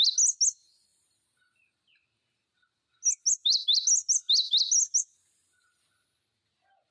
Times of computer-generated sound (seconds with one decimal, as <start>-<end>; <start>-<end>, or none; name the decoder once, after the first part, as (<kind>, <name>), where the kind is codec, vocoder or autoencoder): none